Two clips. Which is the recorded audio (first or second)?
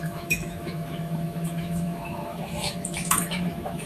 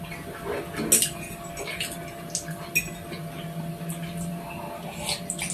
second